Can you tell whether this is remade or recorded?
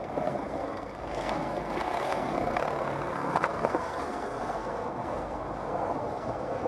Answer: remade